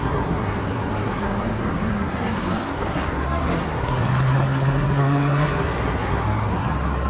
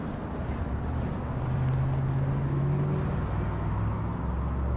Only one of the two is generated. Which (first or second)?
first